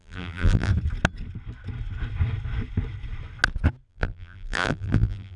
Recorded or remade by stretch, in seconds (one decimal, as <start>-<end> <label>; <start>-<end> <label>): 0.0-0.7 remade; 0.7-3.9 recorded; 3.9-5.4 remade